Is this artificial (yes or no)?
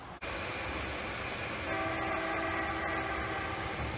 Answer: no